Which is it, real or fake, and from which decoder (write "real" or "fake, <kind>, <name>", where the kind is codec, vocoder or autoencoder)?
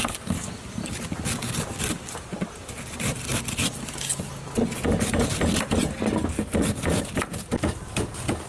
real